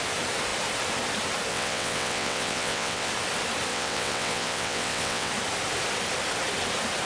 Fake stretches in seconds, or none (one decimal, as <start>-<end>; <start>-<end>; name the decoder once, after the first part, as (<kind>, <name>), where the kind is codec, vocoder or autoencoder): 1.5-3.1 (vocoder, WaveNeXt); 3.7-5.3